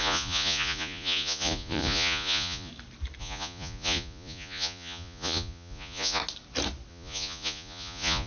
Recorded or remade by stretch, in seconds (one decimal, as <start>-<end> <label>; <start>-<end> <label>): 0.0-2.7 remade; 2.7-3.2 recorded; 3.2-6.2 remade; 6.2-6.9 recorded; 6.9-8.3 remade